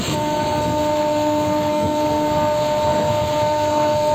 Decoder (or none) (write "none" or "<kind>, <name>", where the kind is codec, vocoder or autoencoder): codec, SNAC